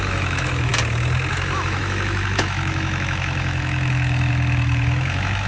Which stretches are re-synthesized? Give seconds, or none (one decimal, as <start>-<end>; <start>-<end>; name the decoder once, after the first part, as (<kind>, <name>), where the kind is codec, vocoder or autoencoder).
0.0-0.7 (autoencoder, DAC-VAE); 1.3-5.5